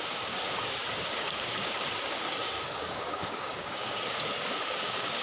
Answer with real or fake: fake